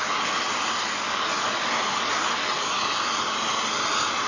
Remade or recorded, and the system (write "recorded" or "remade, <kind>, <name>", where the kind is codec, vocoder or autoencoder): recorded